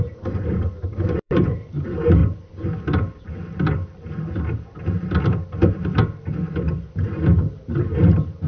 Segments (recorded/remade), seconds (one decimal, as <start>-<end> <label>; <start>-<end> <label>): 0.0-2.2 remade; 2.2-6.9 recorded; 6.9-8.5 remade